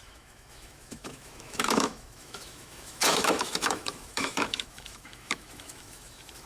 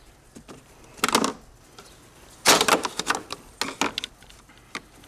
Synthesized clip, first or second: first